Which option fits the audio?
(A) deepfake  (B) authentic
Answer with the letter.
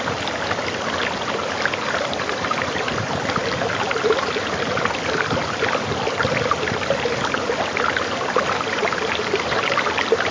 B